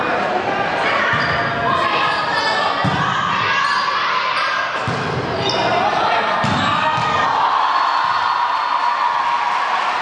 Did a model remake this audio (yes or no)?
no